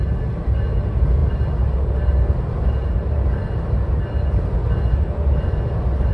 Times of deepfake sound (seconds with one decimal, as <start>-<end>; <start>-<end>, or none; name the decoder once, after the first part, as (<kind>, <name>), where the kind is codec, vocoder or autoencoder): none